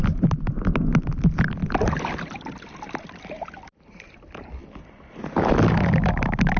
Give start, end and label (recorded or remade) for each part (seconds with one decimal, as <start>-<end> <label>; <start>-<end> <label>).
0.0-6.6 recorded